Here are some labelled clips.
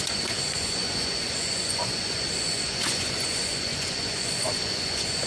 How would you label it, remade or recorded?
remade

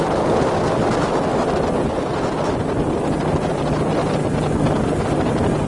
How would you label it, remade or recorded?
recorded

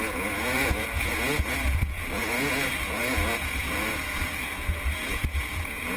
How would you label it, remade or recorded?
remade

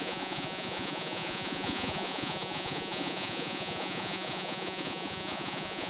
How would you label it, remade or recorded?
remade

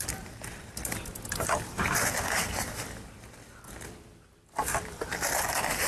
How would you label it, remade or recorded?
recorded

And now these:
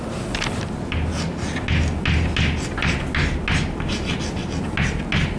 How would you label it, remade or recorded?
recorded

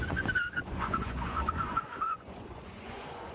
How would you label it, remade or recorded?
remade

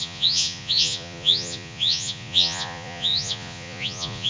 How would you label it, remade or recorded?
remade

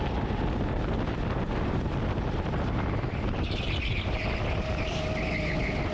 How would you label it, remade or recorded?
recorded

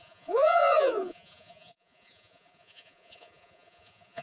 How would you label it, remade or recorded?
remade